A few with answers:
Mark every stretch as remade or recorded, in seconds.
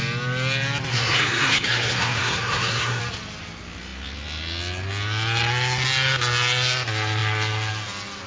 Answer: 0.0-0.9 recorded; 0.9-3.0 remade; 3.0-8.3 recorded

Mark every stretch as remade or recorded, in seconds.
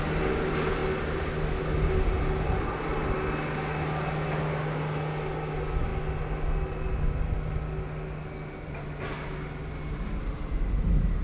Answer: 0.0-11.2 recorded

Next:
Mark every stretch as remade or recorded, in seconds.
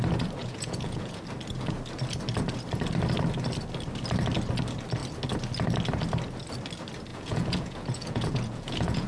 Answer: 0.0-0.4 recorded; 0.4-1.2 remade; 1.2-7.1 recorded; 7.1-9.1 remade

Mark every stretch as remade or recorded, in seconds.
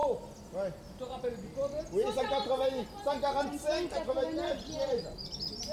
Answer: 0.0-5.7 recorded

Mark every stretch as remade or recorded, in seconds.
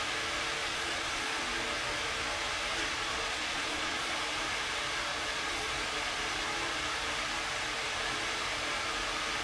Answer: 0.0-0.6 recorded; 0.6-1.4 remade; 1.4-2.8 recorded; 2.8-4.1 remade; 4.1-5.1 recorded; 5.1-5.7 remade; 5.7-9.4 recorded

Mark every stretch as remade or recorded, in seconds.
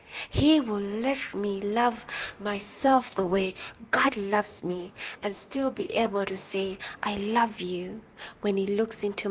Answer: 0.0-2.2 recorded; 2.2-6.8 remade; 6.8-9.3 recorded